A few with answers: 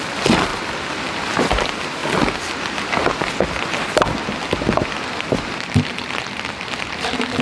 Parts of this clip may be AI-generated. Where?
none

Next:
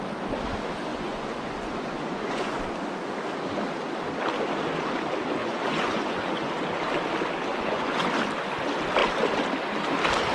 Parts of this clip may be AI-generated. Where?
0.9-2.6 (vocoder, Vocos); 5.4-6.5; 7.5-8.1

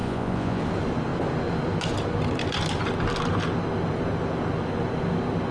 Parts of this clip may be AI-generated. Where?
0.0-0.6 (vocoder, Vocos)

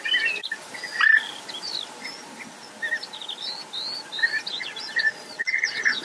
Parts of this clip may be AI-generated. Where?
4.5-6.0 (vocoder, Vocos)

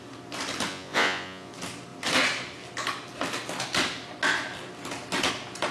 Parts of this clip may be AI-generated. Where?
0.7-1.5 (vocoder, Vocos)